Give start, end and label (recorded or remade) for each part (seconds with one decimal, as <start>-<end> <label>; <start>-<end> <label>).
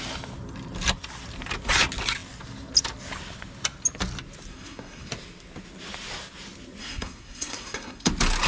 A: 0.0-4.5 recorded; 4.5-5.1 remade; 5.1-6.8 recorded; 6.8-8.1 remade; 8.1-8.5 recorded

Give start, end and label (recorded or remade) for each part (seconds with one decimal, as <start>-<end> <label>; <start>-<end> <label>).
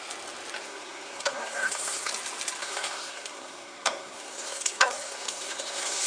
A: 0.0-0.6 recorded; 0.6-2.1 remade; 2.1-2.6 recorded; 2.6-6.1 remade